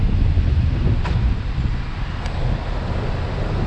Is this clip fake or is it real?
real